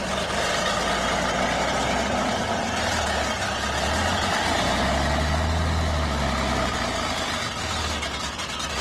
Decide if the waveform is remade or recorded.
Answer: recorded